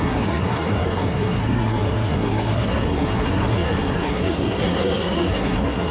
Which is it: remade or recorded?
remade